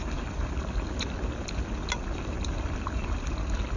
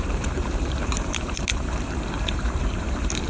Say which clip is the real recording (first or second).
first